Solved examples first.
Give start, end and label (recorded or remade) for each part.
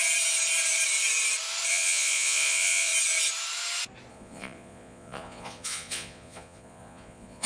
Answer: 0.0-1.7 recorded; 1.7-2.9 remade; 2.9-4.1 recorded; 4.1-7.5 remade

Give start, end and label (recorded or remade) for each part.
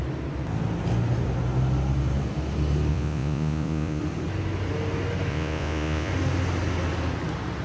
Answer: 0.0-2.9 recorded; 2.9-4.0 remade; 4.0-5.3 recorded; 5.3-6.1 remade; 6.1-7.6 recorded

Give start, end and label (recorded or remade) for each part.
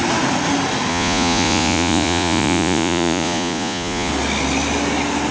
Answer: 0.0-0.9 recorded; 0.9-4.1 remade; 4.1-5.3 recorded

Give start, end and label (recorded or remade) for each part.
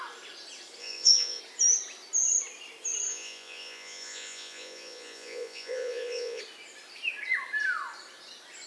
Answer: 0.0-0.8 recorded; 0.8-1.4 remade; 1.4-3.1 recorded; 3.1-6.4 remade; 6.4-8.7 recorded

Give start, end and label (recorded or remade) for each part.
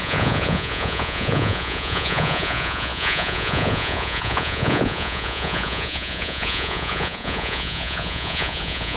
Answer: 0.0-9.0 remade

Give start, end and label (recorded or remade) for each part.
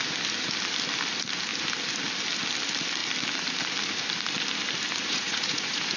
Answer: 0.0-5.0 recorded; 5.0-6.0 remade